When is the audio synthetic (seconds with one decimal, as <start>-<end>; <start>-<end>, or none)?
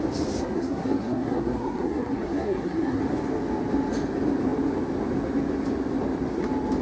0.4-3.0